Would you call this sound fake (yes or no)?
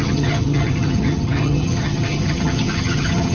yes